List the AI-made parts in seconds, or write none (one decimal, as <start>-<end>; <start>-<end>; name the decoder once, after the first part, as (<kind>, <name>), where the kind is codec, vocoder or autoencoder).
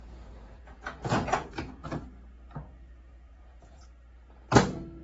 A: 0.0-1.8 (vocoder, Vocos); 2.7-3.8